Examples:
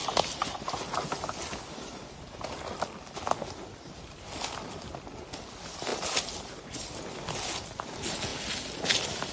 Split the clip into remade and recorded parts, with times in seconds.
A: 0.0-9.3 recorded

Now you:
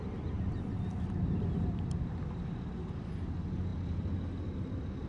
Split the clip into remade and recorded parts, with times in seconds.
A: 0.0-5.1 recorded

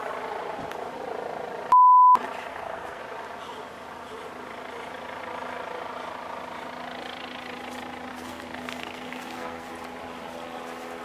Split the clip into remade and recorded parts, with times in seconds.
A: 0.0-2.5 recorded; 2.5-3.0 remade; 3.0-8.1 recorded; 8.1-9.7 remade; 9.7-11.0 recorded

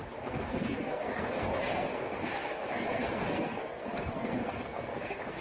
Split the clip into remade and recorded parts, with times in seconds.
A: 0.0-5.4 remade

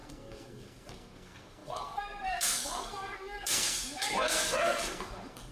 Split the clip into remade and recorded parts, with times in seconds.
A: 0.0-5.5 remade